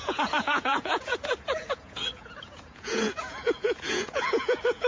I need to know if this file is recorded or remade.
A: remade